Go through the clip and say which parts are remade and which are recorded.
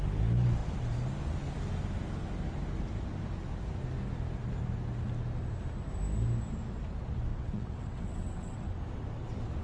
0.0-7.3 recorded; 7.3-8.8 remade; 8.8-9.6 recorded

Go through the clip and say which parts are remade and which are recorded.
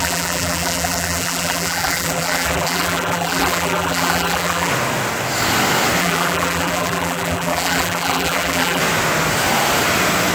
0.0-4.7 remade; 4.7-6.0 recorded; 6.0-8.8 remade; 8.8-10.3 recorded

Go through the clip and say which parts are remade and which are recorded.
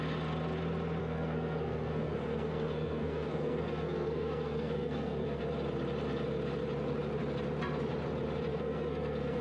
0.0-1.0 recorded; 1.0-5.4 remade; 5.4-8.5 recorded; 8.5-9.4 remade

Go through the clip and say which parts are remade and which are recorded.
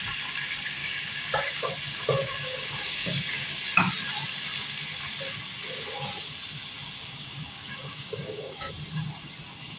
0.0-0.8 recorded; 0.8-1.6 remade; 1.6-2.2 recorded; 2.2-3.6 remade; 3.6-7.0 recorded; 7.0-8.7 remade; 8.7-9.8 recorded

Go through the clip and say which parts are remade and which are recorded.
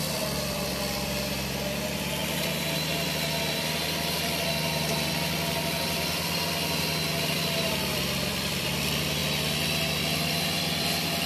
0.0-2.2 remade; 2.2-7.2 recorded; 7.2-9.2 remade; 9.2-10.0 recorded; 10.0-11.3 remade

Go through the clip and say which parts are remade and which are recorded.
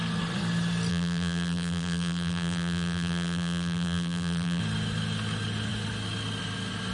0.0-0.9 recorded; 0.9-4.6 remade; 4.6-6.9 recorded